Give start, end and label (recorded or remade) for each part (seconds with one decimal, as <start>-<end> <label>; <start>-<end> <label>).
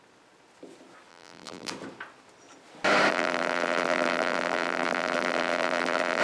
0.0-1.1 recorded; 1.1-1.7 remade; 1.7-3.1 recorded; 3.1-6.2 remade